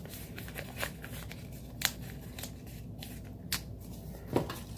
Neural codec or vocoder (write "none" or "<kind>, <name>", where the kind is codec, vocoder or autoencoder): none